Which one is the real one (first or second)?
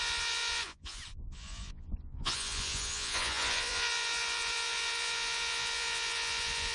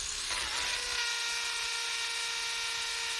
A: second